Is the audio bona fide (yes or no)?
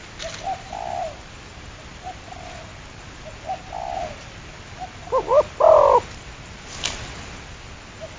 yes